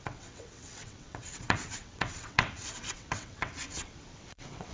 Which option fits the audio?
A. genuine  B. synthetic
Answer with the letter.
B